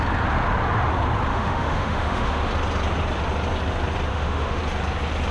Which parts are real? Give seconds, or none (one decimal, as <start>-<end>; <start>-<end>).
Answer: 0.0-1.3; 2.5-4.1; 4.6-5.3